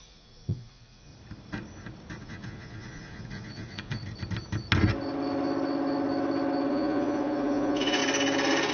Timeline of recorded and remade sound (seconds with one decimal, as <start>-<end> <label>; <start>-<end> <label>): 0.0-1.1 remade; 1.1-2.2 recorded; 2.2-4.0 remade; 4.0-6.7 recorded; 6.7-8.0 remade; 8.0-8.7 recorded